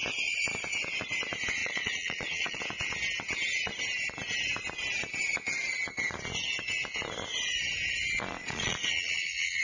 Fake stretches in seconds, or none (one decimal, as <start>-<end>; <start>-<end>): 1.6-2.6; 8.4-9.6